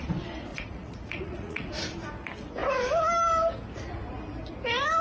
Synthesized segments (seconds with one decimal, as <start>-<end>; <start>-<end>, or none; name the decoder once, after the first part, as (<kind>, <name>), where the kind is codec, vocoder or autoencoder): 0.5-1.7 (vocoder, Vocos)